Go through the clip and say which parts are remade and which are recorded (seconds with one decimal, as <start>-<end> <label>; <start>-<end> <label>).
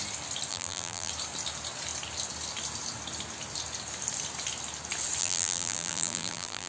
0.0-0.5 recorded; 0.5-1.1 remade; 1.1-5.2 recorded; 5.2-6.7 remade